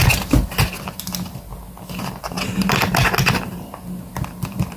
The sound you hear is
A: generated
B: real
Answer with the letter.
B